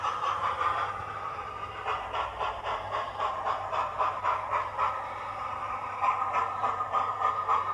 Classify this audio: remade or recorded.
remade